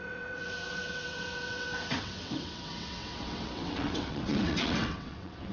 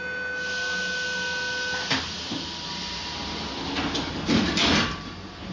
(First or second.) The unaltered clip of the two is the second